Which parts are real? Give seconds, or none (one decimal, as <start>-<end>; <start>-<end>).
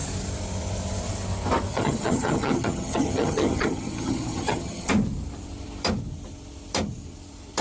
0.0-1.7; 4.9-7.6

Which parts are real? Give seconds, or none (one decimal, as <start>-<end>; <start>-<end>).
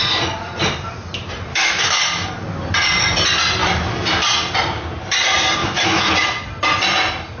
0.0-1.5; 2.0-5.6; 6.1-7.4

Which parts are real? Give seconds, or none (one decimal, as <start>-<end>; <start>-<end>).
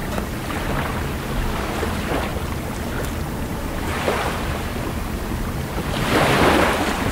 0.0-1.5; 2.3-3.3; 4.7-5.2